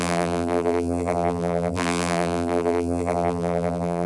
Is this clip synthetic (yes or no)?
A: yes